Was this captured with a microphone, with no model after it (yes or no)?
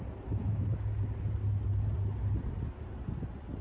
yes